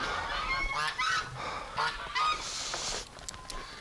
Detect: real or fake real